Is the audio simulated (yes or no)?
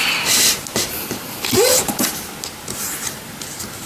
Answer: no